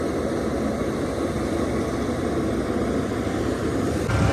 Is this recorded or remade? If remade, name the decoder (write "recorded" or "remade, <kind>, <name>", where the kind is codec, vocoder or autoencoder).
remade, vocoder, BigVGAN v2